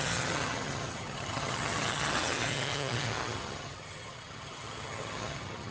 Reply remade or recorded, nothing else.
remade